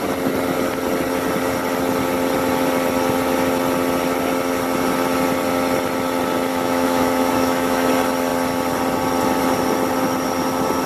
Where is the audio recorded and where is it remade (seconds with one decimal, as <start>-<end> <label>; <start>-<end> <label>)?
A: 0.0-6.5 recorded; 6.5-7.9 remade; 7.9-10.9 recorded